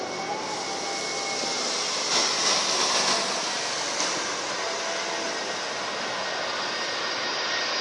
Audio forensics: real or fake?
real